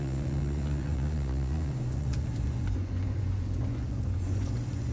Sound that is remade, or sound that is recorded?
remade